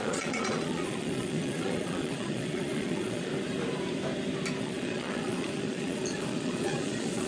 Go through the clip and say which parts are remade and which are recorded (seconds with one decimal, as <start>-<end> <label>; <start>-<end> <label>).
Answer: 0.0-3.3 remade; 3.3-4.6 recorded; 4.6-7.3 remade